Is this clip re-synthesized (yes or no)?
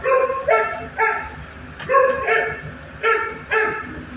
no